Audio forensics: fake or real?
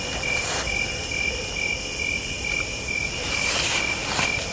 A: real